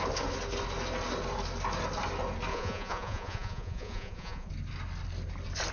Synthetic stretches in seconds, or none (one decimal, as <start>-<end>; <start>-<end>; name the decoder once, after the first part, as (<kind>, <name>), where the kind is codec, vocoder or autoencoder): 2.5-4.5 (vocoder, Vocos)